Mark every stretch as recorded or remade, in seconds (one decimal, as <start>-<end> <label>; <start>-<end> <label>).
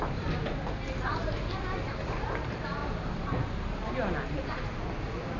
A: 0.0-5.4 recorded